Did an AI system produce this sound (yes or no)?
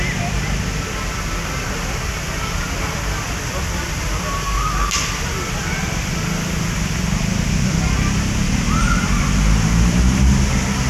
no